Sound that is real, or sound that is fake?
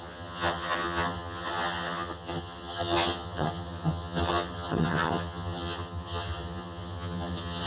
fake